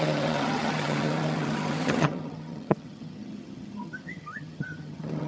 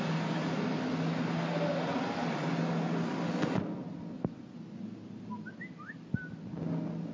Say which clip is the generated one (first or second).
first